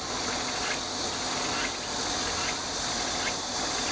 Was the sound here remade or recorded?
recorded